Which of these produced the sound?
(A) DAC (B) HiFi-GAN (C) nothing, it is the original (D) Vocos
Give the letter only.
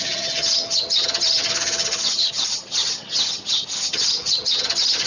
B